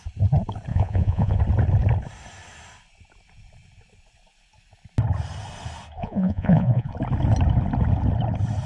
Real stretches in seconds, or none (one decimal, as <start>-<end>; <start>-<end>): 0.0-0.7; 1.4-6.0; 6.9-8.7